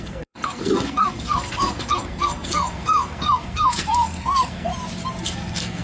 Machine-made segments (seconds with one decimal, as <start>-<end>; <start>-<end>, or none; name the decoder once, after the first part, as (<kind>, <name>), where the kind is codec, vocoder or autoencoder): 0.0-4.7 (codec, SNAC); 5.2-5.8